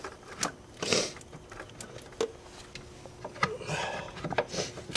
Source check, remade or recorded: recorded